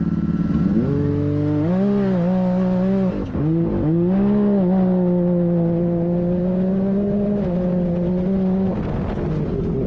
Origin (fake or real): real